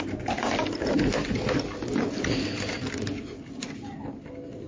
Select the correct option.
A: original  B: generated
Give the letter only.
A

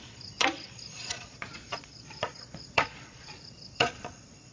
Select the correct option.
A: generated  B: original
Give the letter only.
A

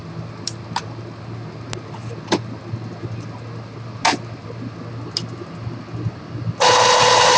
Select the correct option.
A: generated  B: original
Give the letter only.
B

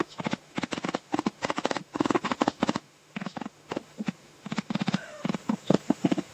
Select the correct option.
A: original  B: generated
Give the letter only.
B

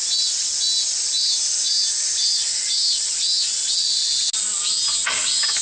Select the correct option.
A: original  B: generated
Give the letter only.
A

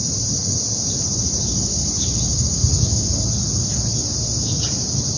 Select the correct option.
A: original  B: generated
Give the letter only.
A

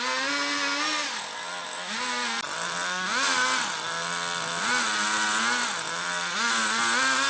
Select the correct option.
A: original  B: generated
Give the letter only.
A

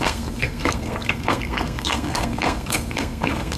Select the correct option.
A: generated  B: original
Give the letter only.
A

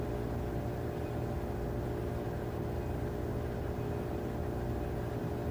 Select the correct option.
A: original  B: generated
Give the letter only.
A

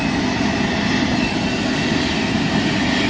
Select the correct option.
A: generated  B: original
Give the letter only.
B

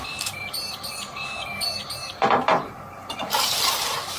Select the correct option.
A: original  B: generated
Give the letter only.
B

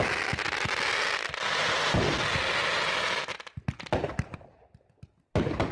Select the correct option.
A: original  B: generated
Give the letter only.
A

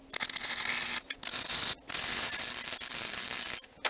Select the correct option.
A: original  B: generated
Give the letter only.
A